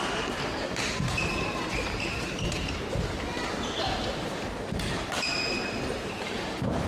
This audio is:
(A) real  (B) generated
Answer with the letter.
B